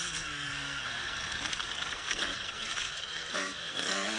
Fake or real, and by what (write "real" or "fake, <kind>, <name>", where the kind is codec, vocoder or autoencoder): fake, codec, SNAC